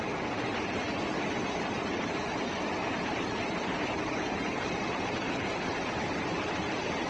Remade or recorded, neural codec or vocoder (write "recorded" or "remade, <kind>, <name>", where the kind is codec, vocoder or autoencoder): remade, vocoder, BigVGAN v2